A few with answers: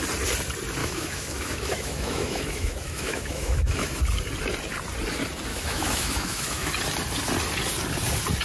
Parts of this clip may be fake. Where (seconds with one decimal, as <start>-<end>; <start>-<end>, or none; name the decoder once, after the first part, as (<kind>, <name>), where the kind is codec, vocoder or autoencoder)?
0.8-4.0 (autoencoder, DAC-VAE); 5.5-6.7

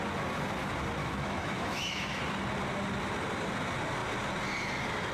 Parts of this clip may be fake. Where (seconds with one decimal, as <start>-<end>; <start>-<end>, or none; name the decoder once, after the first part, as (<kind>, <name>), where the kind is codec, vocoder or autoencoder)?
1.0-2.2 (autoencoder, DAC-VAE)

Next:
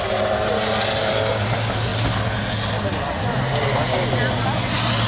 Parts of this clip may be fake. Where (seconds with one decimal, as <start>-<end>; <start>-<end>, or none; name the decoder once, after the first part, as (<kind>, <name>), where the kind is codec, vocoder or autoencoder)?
none

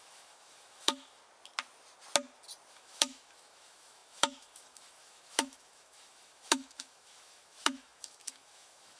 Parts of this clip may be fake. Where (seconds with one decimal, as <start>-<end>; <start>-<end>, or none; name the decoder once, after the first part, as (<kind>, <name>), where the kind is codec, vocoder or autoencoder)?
0.0-1.2 (autoencoder, DAC-VAE); 2.7-9.0

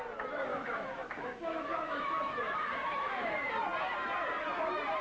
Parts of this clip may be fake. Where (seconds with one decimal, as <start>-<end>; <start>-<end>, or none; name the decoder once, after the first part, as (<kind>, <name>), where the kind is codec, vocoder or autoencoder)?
0.5-3.5 (autoencoder, DAC-VAE)

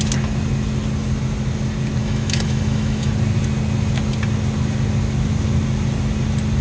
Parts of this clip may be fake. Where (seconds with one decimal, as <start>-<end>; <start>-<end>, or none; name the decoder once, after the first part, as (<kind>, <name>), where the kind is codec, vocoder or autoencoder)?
2.0-3.1 (autoencoder, DAC-VAE)